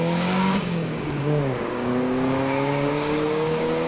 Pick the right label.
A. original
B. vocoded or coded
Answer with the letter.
B